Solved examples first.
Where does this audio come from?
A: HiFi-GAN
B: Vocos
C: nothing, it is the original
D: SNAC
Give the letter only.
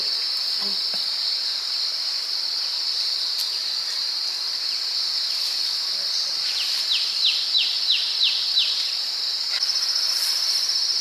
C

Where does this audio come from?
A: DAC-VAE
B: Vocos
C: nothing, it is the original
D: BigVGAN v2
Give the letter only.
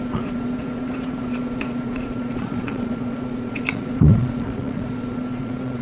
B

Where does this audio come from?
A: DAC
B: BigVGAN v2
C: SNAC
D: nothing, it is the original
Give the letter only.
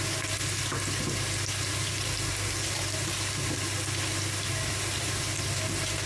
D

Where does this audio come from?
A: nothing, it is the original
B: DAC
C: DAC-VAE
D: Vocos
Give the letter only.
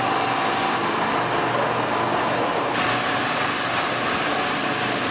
A